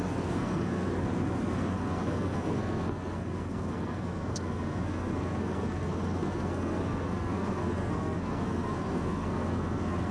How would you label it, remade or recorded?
remade